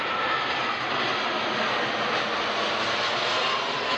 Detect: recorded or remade recorded